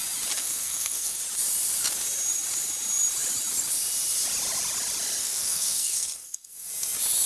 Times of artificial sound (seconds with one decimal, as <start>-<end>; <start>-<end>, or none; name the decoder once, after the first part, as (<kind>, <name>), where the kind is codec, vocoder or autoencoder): 0.4-1.2 (codec, SNAC); 5.2-6.7